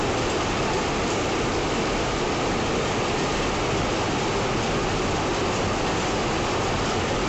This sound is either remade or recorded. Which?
recorded